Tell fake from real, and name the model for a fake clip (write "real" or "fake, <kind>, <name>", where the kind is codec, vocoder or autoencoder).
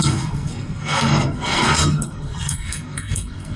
fake, codec, SNAC